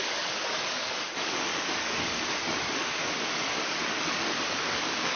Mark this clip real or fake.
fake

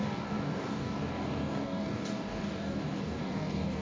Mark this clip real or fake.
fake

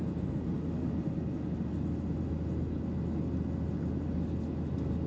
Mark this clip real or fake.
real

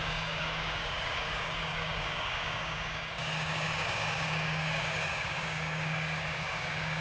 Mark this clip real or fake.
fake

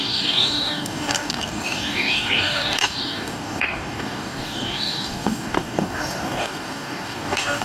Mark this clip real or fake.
fake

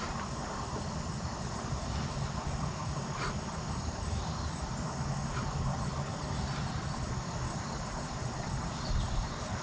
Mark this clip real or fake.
real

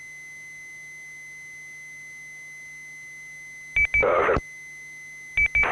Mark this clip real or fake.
real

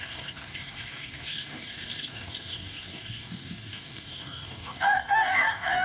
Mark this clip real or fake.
fake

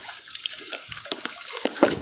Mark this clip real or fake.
fake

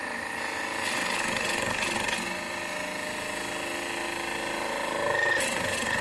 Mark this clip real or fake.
real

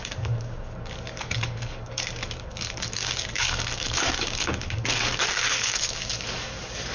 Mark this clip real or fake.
fake